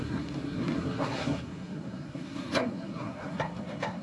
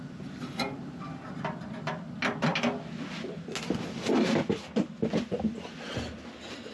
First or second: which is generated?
first